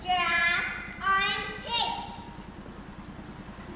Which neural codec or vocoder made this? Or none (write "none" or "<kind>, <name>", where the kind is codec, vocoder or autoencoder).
none